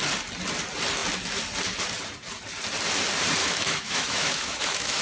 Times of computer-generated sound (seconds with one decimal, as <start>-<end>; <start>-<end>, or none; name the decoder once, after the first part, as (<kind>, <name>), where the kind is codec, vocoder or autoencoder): 3.4-5.0 (autoencoder, DAC-VAE)